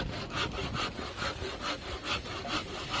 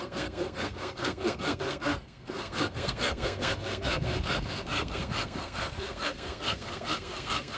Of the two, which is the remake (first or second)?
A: second